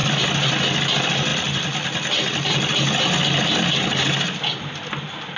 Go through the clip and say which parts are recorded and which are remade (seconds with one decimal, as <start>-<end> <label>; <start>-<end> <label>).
0.0-5.4 recorded